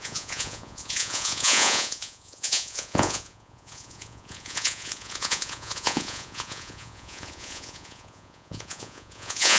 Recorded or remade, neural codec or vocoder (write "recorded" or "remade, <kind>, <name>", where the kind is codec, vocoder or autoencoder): remade, vocoder, Vocos